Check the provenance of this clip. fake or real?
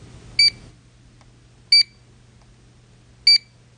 real